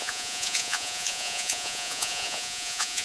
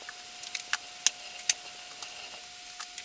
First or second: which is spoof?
first